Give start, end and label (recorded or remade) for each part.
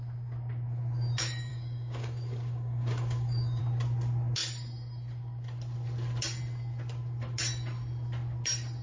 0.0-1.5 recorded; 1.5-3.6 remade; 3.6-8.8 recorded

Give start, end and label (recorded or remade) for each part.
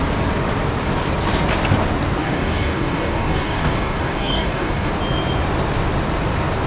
0.0-2.2 recorded; 2.2-4.9 remade; 4.9-6.7 recorded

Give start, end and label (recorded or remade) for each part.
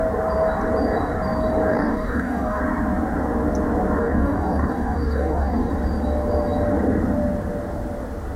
0.0-1.7 recorded; 1.7-2.6 remade; 2.6-4.0 recorded; 4.0-5.7 remade; 5.7-8.4 recorded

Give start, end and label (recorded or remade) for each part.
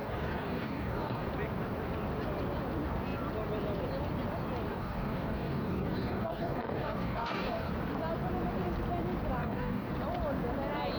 0.0-1.3 remade; 1.3-4.7 recorded; 4.7-7.7 remade; 7.7-9.4 recorded; 9.4-9.9 remade; 9.9-11.0 recorded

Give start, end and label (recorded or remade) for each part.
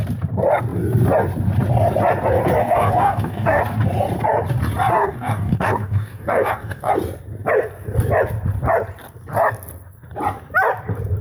0.0-2.6 recorded; 2.6-3.6 remade; 3.6-4.9 recorded; 4.9-6.9 remade; 6.9-11.2 recorded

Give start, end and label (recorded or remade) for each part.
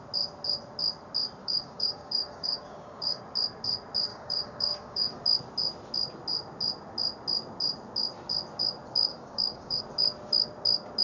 0.0-1.4 recorded; 1.4-3.2 remade; 3.2-4.1 recorded; 4.1-5.2 remade; 5.2-9.1 recorded; 9.1-9.8 remade; 9.8-11.0 recorded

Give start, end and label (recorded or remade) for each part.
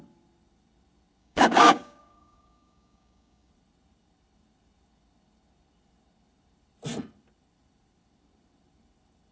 0.0-1.2 recorded; 1.2-3.5 remade; 3.5-9.3 recorded